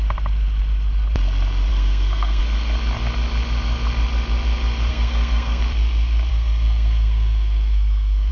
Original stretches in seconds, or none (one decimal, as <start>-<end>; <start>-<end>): 0.0-1.7; 2.4-4.9; 5.6-6.3